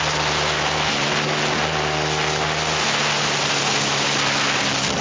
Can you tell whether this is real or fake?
real